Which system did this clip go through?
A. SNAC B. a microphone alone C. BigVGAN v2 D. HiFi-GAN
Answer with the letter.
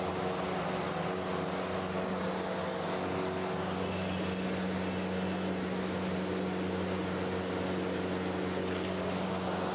B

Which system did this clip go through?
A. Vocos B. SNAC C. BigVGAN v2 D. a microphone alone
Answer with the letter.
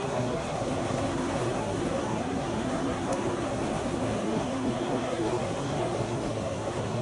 B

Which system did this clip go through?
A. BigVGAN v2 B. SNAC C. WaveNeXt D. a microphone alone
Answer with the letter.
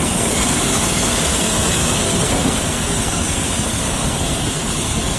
B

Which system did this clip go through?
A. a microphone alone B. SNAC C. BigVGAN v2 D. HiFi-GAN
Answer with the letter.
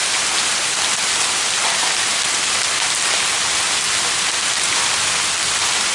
A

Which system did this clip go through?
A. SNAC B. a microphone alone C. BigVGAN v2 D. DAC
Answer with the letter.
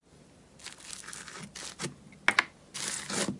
B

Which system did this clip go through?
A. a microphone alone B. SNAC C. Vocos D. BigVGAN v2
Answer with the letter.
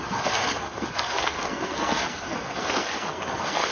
B